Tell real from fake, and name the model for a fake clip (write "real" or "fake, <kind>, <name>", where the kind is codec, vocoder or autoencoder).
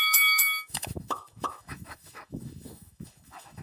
fake, autoencoder, DAC-VAE